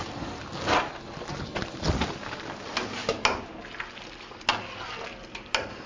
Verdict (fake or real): real